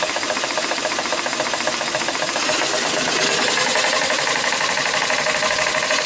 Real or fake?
real